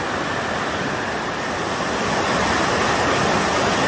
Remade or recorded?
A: recorded